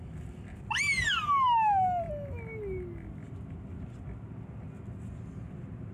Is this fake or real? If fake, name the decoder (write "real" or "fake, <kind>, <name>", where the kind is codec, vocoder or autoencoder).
real